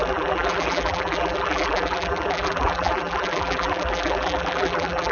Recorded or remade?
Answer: remade